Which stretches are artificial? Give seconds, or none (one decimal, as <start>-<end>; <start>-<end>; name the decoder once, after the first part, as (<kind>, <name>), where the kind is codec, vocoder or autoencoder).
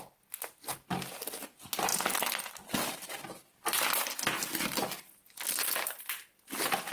none